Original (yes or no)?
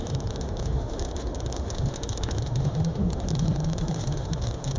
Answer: no